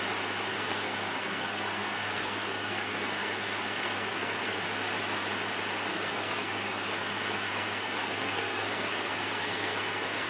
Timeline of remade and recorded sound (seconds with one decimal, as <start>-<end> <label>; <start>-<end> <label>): 0.0-0.5 recorded; 0.5-4.6 remade; 4.6-5.9 recorded; 5.9-10.3 remade